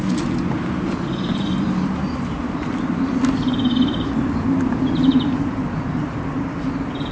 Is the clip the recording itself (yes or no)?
yes